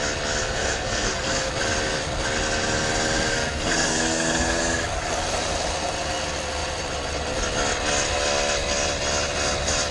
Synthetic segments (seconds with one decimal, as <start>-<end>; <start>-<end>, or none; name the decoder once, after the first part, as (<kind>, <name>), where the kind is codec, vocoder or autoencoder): 0.4-1.5 (codec, SNAC); 3.3-4.6